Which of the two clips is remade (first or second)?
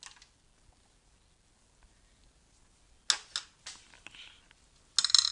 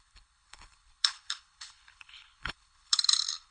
second